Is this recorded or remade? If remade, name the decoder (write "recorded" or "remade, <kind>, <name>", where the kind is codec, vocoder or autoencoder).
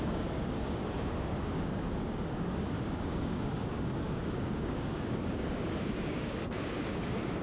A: remade, codec, DAC